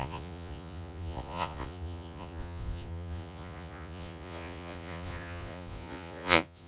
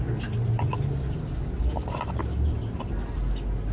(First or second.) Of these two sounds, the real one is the second